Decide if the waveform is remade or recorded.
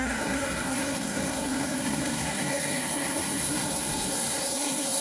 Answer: remade